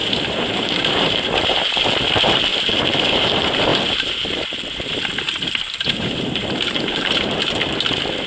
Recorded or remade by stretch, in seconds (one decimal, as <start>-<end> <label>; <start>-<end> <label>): 0.0-1.7 remade; 1.7-2.5 recorded; 2.5-3.3 remade; 3.3-3.7 recorded; 3.7-7.4 remade; 7.4-8.3 recorded